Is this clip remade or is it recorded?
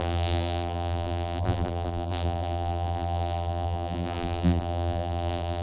remade